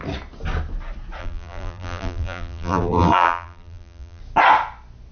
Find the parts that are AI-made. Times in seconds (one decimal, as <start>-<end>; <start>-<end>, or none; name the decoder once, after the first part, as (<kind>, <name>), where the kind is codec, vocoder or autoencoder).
1.2-4.2 (vocoder, BigVGAN v2)